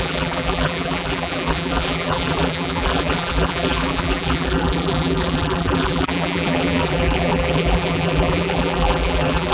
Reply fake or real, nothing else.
fake